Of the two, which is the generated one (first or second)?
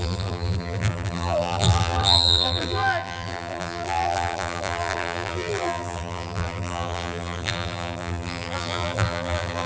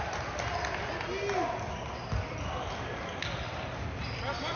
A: first